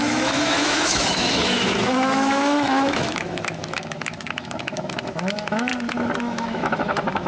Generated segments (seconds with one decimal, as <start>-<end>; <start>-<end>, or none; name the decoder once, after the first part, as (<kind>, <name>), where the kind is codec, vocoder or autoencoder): 0.0-5.7 (autoencoder, DAC-VAE); 6.2-7.3